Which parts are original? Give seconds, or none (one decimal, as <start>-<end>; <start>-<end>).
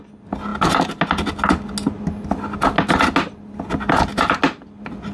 0.0-5.1